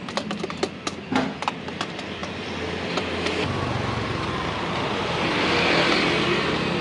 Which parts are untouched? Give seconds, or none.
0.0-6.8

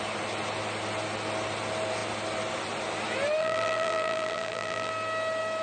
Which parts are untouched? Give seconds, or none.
0.0-3.4; 4.9-5.6